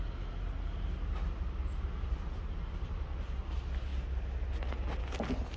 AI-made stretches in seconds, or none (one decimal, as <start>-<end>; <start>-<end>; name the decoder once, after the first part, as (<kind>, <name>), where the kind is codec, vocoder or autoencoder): none